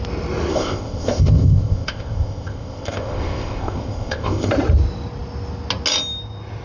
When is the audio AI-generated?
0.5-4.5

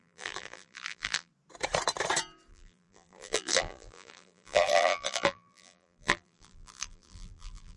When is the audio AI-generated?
0.0-1.3; 2.5-7.8

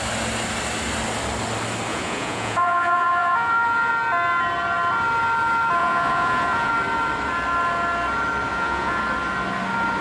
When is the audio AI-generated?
1.9-3.9; 5.8-6.7; 8.5-9.0